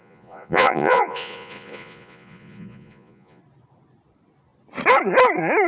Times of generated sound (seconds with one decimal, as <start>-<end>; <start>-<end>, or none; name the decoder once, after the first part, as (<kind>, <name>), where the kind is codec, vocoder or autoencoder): 0.0-3.4 (vocoder, Vocos)